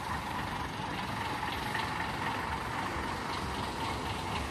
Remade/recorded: recorded